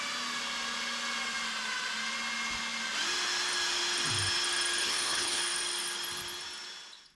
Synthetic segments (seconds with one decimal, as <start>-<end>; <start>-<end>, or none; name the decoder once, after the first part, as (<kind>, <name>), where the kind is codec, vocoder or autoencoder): 4.8-5.4 (codec, HILCodec)